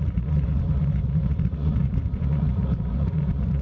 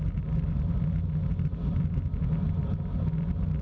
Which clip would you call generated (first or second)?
first